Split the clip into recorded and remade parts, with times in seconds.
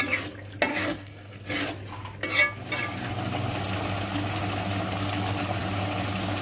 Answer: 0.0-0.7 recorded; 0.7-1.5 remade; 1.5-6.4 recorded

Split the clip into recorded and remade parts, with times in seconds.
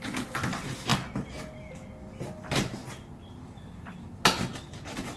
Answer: 0.0-5.2 recorded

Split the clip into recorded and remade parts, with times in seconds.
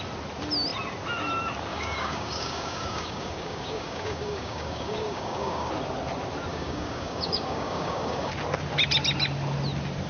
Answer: 0.0-1.7 recorded; 1.7-5.7 remade; 5.7-6.5 recorded; 6.5-8.3 remade; 8.3-10.1 recorded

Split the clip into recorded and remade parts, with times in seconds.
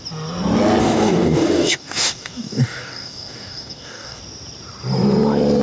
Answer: 0.0-0.8 recorded; 0.8-4.2 remade; 4.2-5.6 recorded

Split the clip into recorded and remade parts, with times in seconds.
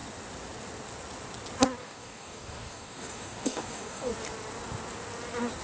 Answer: 0.0-1.8 recorded; 1.8-4.1 remade; 4.1-5.6 recorded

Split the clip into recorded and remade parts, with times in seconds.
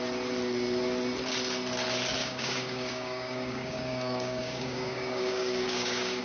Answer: 0.0-2.2 recorded; 2.2-6.2 remade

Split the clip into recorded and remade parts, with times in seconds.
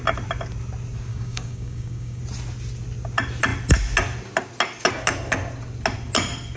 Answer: 0.0-1.1 recorded; 1.1-2.2 remade; 2.2-6.6 recorded